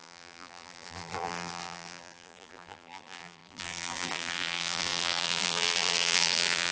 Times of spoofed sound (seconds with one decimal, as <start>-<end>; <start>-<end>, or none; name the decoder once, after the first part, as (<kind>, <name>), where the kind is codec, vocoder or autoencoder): 0.0-6.7 (vocoder, BigVGAN v2)